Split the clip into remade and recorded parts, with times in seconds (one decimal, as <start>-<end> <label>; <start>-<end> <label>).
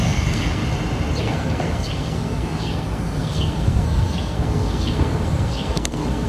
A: 0.0-0.6 remade; 0.6-1.2 recorded; 1.2-6.3 remade